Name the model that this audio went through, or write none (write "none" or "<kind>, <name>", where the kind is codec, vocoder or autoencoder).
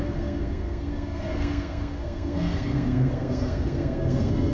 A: codec, SNAC